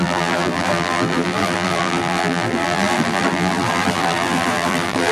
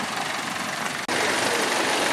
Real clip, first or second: second